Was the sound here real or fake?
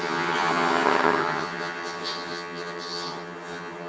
fake